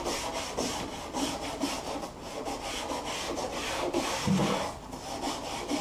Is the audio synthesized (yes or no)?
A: no